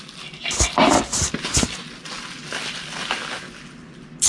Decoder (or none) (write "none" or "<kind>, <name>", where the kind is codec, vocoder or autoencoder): none